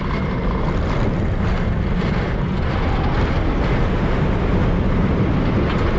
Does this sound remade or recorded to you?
recorded